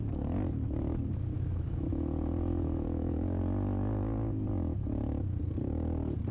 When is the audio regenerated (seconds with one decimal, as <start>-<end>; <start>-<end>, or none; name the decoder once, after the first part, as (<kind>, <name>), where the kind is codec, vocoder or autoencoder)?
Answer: 1.3-2.0 (autoencoder, DAC-VAE); 2.5-3.4